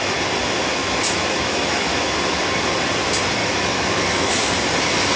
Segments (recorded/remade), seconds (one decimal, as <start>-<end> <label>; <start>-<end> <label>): 0.0-0.8 recorded; 0.8-2.1 remade; 2.1-3.4 recorded; 3.4-4.3 remade; 4.3-5.2 recorded

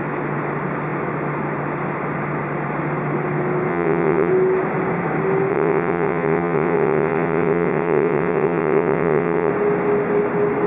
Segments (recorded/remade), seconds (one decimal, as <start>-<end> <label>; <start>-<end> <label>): 0.0-3.7 recorded; 3.7-4.3 remade; 4.3-5.5 recorded; 5.5-9.5 remade; 9.5-10.7 recorded

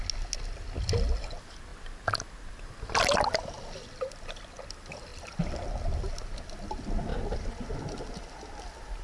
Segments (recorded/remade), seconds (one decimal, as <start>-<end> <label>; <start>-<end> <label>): 0.0-9.0 recorded

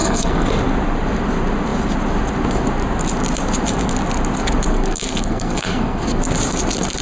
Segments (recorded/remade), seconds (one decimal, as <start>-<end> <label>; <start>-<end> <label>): 0.0-0.5 remade; 0.5-4.7 recorded; 4.7-6.2 remade; 6.2-7.0 recorded

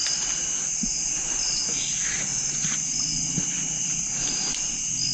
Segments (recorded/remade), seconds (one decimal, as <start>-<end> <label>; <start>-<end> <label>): 0.0-5.1 recorded

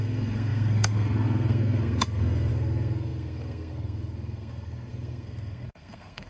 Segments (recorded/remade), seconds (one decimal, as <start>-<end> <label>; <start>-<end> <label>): 0.0-6.3 remade

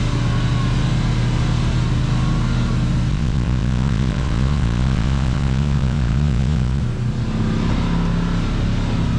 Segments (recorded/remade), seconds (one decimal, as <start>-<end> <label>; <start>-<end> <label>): 0.0-3.1 recorded; 3.1-6.8 remade; 6.8-9.2 recorded

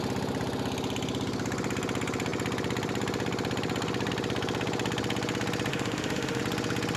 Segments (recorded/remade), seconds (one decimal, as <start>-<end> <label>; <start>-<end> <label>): 0.0-5.7 recorded; 5.7-6.4 remade; 6.4-7.0 recorded